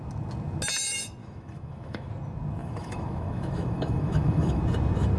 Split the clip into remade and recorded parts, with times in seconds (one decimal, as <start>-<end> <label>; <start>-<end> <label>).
0.0-1.2 recorded; 1.2-2.1 remade; 2.1-2.6 recorded; 2.6-4.6 remade; 4.6-5.2 recorded